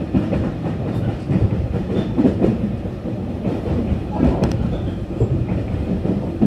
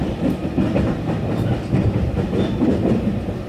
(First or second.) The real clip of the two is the second